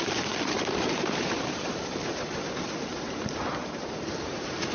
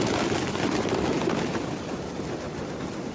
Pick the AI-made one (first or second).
first